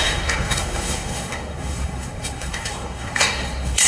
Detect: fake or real fake